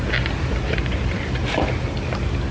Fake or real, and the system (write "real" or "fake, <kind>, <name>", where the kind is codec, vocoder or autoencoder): real